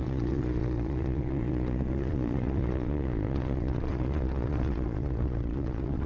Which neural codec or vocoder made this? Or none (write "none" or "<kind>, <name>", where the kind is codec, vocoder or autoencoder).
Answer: vocoder, Vocos